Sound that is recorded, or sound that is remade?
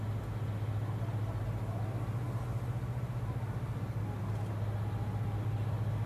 recorded